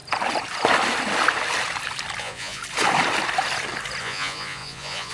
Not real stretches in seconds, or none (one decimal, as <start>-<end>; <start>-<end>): 2.2-2.6; 4.0-5.1